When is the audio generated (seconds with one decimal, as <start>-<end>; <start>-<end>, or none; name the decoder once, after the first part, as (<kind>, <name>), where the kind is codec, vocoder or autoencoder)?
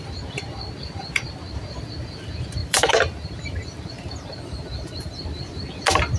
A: 2.6-5.4 (vocoder, BigVGAN v2)